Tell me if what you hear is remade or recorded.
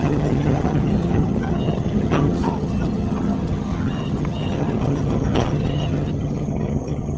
remade